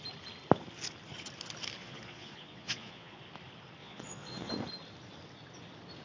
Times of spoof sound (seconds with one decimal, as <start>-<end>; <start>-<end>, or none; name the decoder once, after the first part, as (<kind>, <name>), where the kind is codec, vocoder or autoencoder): 1.8-3.2 (vocoder, Vocos); 3.8-4.5